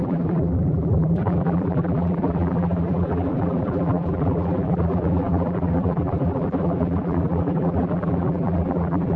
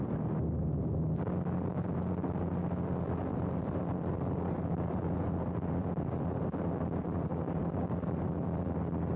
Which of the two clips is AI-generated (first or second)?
first